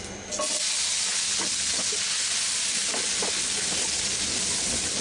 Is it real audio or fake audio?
real